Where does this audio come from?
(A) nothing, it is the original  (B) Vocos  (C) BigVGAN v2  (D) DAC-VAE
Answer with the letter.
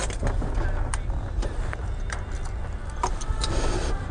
A